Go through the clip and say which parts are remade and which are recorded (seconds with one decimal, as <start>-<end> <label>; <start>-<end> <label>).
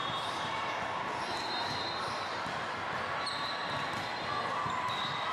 0.0-0.7 remade; 0.7-5.3 recorded